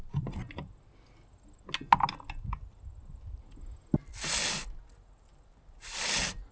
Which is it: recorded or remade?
recorded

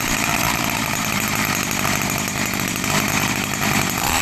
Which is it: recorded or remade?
remade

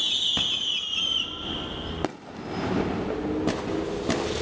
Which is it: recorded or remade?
recorded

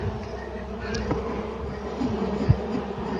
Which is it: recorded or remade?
recorded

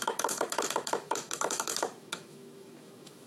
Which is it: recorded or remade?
remade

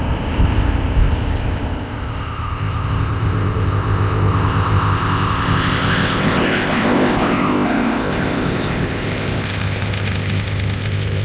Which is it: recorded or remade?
remade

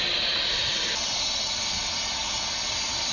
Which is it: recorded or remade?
recorded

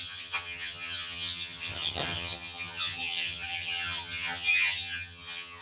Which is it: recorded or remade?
remade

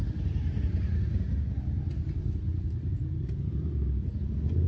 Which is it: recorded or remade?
recorded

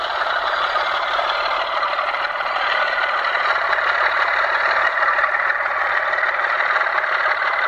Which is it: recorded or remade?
remade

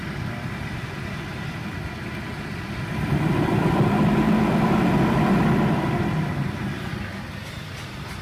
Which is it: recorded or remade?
recorded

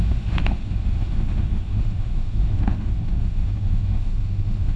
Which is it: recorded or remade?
remade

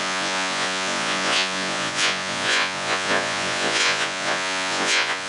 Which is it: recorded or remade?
remade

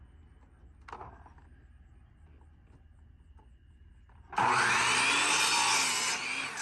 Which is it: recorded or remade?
recorded